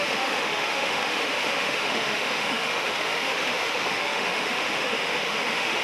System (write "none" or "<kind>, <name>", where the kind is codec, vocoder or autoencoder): autoencoder, DAC-VAE